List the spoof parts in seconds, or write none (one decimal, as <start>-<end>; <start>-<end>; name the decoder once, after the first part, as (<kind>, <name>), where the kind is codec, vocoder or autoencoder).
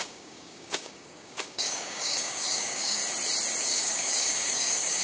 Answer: 0.0-3.0 (codec, DAC); 3.6-5.0